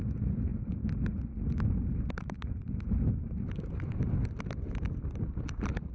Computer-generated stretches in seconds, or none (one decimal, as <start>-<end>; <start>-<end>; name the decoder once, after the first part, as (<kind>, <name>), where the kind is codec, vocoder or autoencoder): none